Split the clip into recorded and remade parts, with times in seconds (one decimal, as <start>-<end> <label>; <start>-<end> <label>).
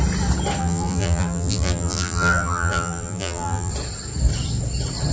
0.0-0.6 recorded; 0.6-3.7 remade; 3.7-5.1 recorded